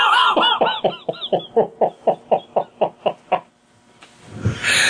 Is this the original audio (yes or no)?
yes